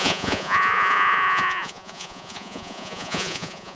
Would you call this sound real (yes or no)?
no